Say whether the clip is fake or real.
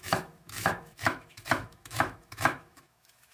fake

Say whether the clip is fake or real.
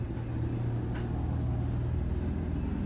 real